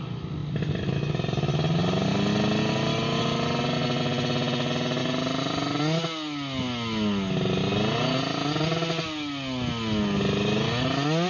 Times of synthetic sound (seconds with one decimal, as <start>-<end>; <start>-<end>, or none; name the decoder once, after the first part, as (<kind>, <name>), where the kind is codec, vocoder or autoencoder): none

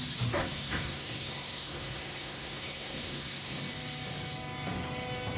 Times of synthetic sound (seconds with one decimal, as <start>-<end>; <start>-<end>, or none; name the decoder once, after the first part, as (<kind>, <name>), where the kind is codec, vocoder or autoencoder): 0.4-3.6 (codec, SNAC)

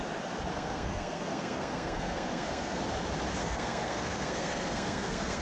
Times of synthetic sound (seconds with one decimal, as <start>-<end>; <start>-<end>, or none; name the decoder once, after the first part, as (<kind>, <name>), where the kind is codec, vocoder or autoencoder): 0.5-2.8 (codec, SNAC); 3.4-5.4

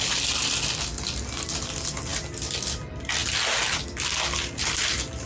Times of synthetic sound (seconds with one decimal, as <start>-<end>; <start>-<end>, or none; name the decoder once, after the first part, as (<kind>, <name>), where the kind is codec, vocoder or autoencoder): none

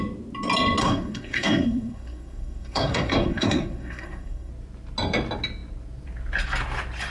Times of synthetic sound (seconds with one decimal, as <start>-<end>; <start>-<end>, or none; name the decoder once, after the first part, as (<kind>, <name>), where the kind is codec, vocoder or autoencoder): 0.8-4.5 (codec, SNAC)

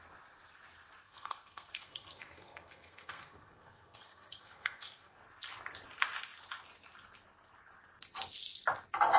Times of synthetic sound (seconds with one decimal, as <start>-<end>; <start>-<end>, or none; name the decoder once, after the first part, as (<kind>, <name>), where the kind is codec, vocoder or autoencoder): 1.0-5.2 (codec, SNAC)

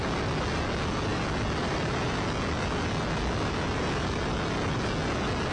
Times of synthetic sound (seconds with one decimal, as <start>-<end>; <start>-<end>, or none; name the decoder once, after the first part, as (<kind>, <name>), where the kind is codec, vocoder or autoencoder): none